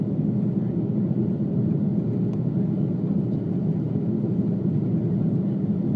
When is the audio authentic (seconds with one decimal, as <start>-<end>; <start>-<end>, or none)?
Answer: 0.0-6.0